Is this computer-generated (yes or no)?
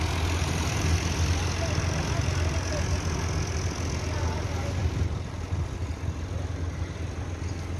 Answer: no